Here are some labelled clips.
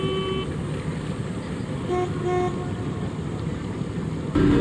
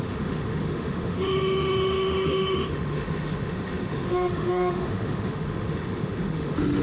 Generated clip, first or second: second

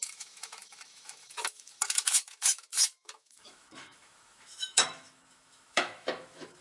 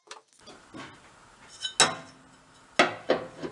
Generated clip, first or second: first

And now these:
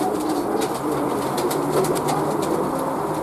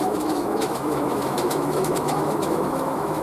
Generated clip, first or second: second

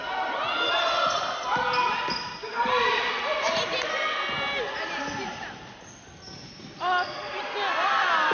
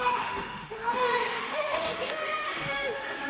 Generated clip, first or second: second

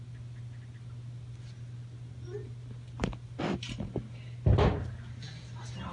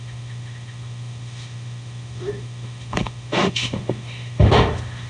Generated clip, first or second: second